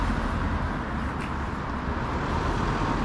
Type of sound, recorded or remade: recorded